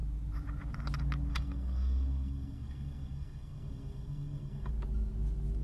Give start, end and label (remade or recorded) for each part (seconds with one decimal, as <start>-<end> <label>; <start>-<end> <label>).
0.0-1.3 recorded; 1.3-4.7 remade; 4.7-5.6 recorded